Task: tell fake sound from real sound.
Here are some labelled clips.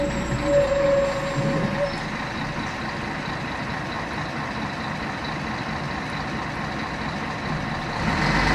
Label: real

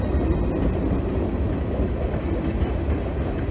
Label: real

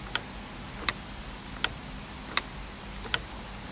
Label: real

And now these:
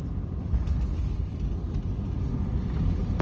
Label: real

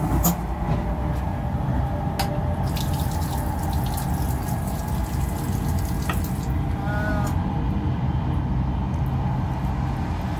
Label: real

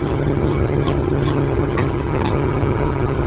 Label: fake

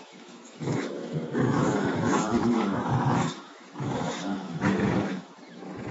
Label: fake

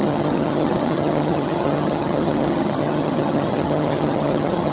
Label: fake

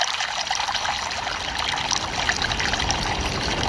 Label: real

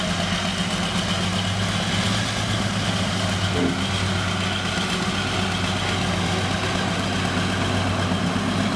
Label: real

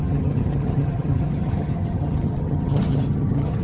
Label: fake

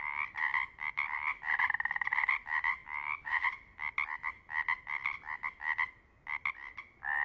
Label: real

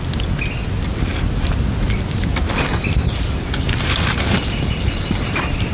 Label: real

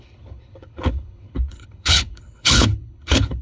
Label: fake